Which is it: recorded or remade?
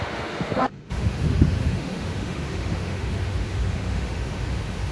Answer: remade